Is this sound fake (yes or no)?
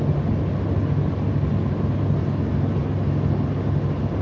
no